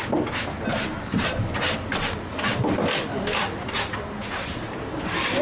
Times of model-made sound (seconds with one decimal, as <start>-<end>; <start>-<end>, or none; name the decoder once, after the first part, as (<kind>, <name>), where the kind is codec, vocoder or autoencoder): none